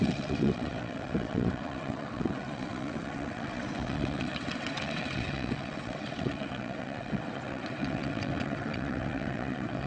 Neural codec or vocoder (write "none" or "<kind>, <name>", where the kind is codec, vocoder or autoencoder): vocoder, WaveNeXt